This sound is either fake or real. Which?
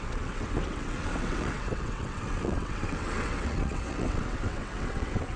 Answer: fake